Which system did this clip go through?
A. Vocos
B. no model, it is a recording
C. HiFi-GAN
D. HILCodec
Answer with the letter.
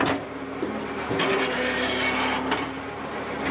B